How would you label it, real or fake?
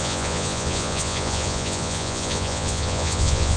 fake